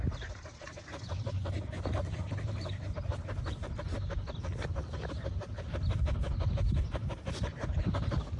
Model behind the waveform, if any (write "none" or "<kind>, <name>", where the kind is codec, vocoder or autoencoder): none